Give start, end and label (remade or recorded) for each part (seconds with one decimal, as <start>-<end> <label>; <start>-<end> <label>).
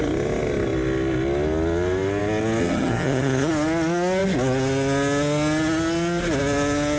0.0-2.6 recorded; 2.6-3.5 remade; 3.5-7.0 recorded